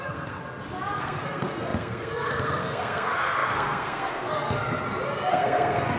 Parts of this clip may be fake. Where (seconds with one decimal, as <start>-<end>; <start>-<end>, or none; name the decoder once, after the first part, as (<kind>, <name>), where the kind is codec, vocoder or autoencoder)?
0.0-0.4 (codec, SNAC); 1.0-4.6; 5.3-6.0